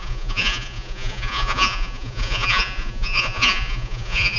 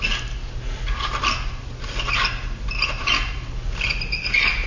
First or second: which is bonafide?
second